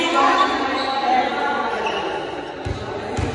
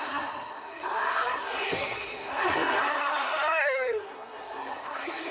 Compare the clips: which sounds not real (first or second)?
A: second